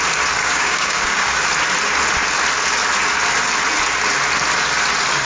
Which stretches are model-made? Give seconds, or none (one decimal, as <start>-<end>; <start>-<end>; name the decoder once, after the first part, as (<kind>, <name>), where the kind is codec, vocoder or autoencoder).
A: 0.4-1.4 (codec, DAC)